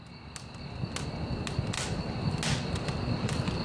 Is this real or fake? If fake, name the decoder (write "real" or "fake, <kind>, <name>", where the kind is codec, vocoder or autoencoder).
real